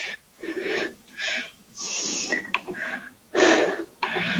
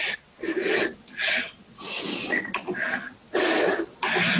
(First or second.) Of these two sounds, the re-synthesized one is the first